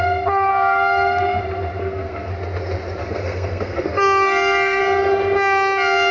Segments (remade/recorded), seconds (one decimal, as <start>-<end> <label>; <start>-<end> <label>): 0.0-0.5 recorded; 0.5-1.4 remade; 1.4-1.8 recorded; 1.8-2.3 remade; 2.3-3.0 recorded; 3.0-4.8 remade; 4.8-6.1 recorded